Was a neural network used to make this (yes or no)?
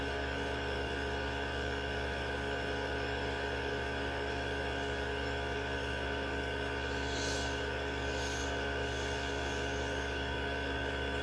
yes